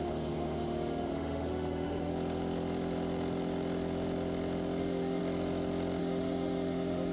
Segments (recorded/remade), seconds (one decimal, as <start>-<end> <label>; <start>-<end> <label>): 0.0-2.1 remade; 2.1-4.8 recorded; 4.8-5.2 remade; 5.2-6.0 recorded; 6.0-7.1 remade